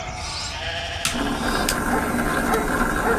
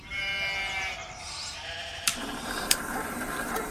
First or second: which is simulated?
second